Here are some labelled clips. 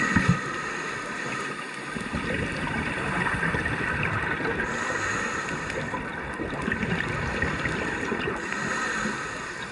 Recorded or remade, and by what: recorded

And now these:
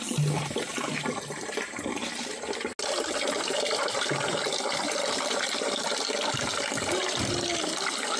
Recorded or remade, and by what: recorded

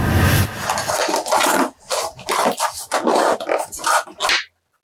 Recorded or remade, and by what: recorded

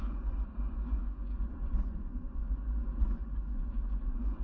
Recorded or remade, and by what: remade, vocoder, Vocos